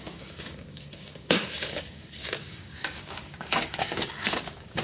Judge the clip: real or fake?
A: fake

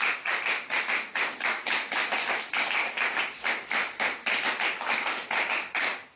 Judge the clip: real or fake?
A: real